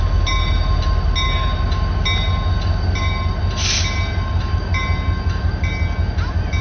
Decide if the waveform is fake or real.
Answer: real